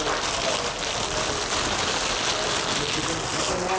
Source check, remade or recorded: recorded